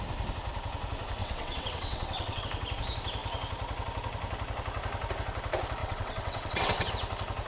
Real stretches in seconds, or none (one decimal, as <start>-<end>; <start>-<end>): 0.0-1.2; 2.4-5.8; 6.9-7.5

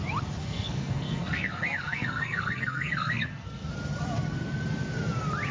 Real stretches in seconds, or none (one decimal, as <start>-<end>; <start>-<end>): 0.0-0.4; 3.7-5.5